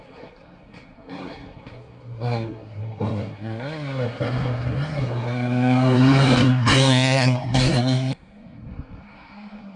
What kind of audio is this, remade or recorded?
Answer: remade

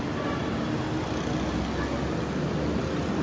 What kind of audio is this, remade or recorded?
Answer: recorded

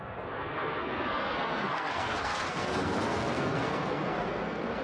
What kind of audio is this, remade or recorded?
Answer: remade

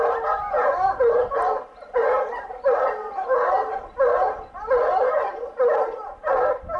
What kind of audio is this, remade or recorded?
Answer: recorded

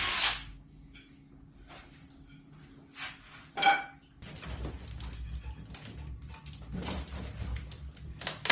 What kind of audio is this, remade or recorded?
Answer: recorded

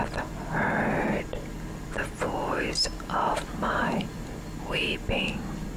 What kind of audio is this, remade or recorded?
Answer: recorded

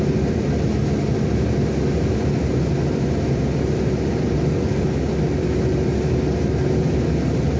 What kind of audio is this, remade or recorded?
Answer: recorded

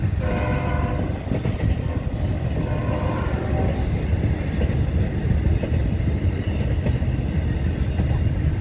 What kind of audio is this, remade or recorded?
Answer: recorded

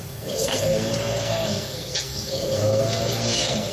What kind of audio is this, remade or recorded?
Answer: remade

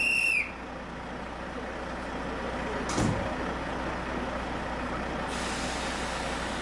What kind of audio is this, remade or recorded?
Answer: recorded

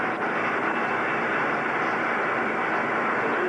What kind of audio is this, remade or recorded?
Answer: recorded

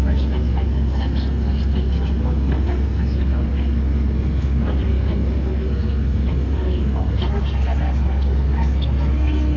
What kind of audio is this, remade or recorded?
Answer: remade